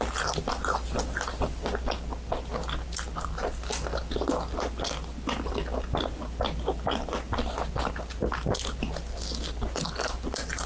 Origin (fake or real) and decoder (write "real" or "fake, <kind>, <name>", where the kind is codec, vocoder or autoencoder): real